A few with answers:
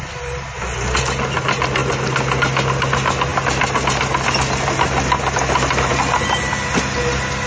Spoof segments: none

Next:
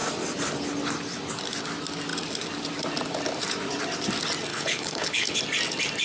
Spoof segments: 4.5-5.4

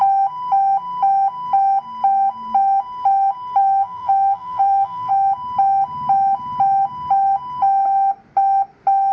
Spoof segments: 3.6-5.1

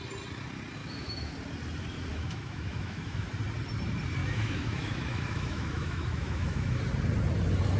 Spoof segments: 0.8-1.3; 2.1-3.3; 4.2-6.8

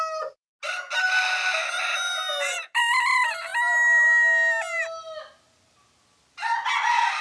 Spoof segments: none

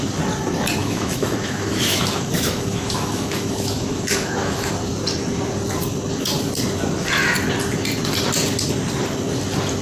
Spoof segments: 0.8-4.7